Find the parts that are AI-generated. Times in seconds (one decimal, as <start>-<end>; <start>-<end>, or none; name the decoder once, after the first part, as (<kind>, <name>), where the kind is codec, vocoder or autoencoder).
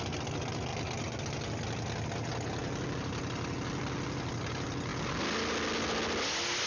none